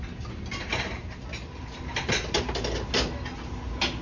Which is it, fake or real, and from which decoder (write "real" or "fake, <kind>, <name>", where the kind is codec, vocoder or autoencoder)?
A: real